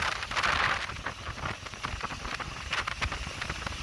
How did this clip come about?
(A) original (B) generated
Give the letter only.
A